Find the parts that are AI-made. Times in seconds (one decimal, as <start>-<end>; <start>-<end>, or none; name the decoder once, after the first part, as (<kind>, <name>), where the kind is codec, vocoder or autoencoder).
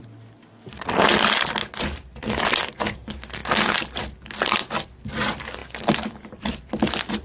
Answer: none